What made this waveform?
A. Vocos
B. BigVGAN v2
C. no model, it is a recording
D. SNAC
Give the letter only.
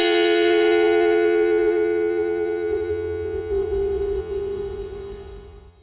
A